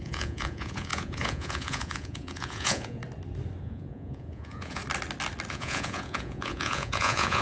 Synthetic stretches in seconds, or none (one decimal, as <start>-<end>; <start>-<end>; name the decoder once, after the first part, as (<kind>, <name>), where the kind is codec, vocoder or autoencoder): 0.0-3.0 (vocoder, Vocos); 3.6-4.8; 5.5-7.4